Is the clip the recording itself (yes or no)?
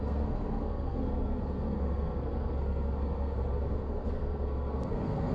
no